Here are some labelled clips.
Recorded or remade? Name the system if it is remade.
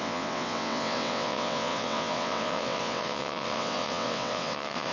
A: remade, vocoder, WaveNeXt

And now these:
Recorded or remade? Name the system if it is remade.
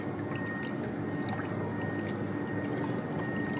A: recorded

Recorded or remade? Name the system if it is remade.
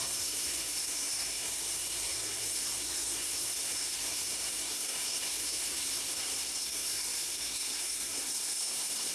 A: remade, codec, SNAC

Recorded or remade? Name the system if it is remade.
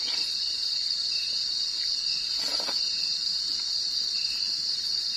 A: recorded